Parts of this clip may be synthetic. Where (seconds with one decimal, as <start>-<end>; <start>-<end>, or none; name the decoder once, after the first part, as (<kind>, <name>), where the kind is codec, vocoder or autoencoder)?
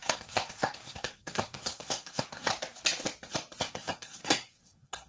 0.0-2.5 (codec, SNAC); 3.6-5.1